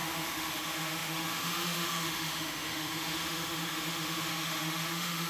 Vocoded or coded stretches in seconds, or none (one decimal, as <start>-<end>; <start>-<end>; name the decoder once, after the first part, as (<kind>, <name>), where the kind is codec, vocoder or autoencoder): 0.0-5.3 (autoencoder, DAC-VAE)